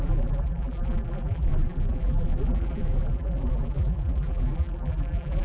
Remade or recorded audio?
remade